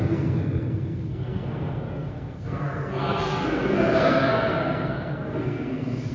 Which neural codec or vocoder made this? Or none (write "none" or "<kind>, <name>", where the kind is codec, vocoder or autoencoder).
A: codec, SNAC